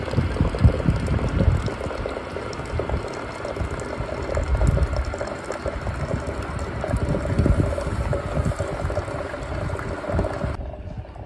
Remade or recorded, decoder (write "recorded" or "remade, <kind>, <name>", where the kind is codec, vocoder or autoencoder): recorded